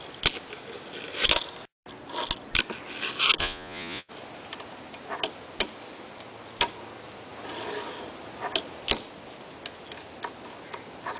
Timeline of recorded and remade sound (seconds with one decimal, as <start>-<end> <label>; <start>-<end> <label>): 0.0-3.4 recorded; 3.4-4.1 remade; 4.1-11.2 recorded

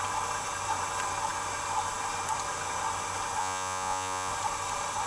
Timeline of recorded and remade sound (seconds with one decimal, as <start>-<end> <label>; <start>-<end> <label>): 0.0-3.4 recorded; 3.4-4.3 remade; 4.3-5.1 recorded